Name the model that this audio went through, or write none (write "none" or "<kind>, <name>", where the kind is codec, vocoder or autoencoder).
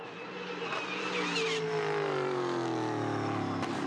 none